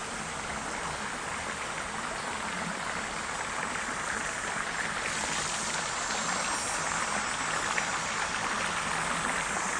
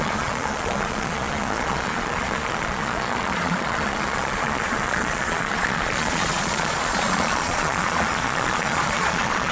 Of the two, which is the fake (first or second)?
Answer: second